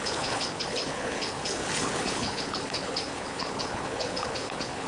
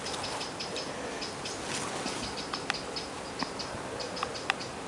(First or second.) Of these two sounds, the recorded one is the second